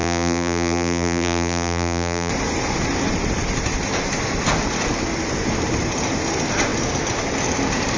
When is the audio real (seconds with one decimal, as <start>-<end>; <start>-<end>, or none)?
2.3-8.0